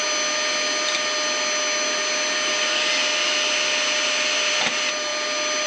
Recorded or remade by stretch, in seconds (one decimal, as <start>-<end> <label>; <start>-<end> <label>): 0.0-5.7 recorded